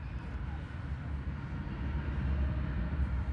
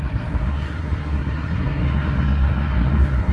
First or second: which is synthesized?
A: second